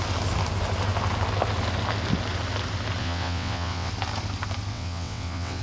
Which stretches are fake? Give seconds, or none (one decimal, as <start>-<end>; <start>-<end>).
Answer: 3.0-3.9; 4.7-5.6